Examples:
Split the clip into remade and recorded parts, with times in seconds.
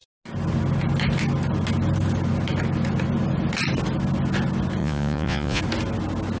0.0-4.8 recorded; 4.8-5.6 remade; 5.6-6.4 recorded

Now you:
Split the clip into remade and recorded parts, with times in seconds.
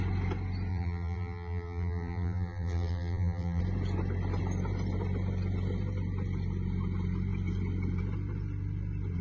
0.0-0.7 recorded; 0.7-3.6 remade; 3.6-9.2 recorded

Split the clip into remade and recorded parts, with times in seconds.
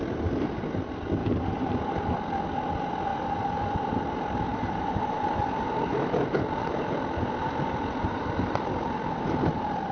0.0-1.2 recorded; 1.2-1.7 remade; 1.7-3.1 recorded; 3.1-4.0 remade; 4.0-4.5 recorded; 4.5-5.4 remade; 5.4-9.9 recorded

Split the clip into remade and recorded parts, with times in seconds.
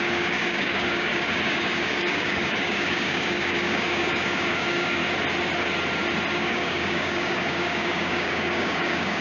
0.0-5.0 remade; 5.0-6.3 recorded; 6.3-9.2 remade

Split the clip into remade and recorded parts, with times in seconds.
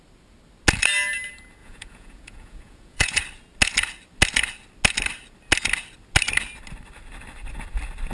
0.0-1.6 recorded; 1.6-3.2 remade; 3.2-8.1 recorded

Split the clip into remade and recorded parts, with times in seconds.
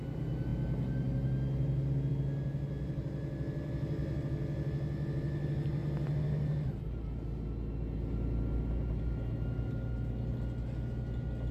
0.0-11.5 recorded